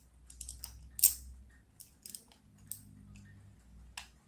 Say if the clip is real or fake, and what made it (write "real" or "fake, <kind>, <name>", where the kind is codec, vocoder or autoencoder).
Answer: real